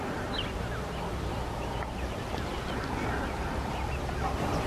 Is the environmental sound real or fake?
real